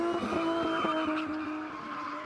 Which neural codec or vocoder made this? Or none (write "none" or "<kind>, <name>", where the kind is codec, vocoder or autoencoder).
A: none